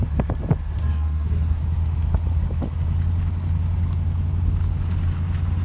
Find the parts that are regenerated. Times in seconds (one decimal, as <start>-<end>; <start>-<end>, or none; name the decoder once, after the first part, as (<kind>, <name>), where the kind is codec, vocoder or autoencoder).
0.8-1.6 (codec, SNAC)